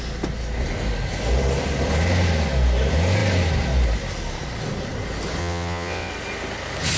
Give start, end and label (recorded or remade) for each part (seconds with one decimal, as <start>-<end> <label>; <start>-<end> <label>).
0.0-5.4 recorded; 5.4-6.1 remade; 6.1-7.0 recorded